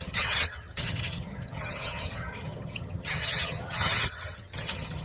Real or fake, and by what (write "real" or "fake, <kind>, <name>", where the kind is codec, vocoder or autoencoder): fake, vocoder, HiFi-GAN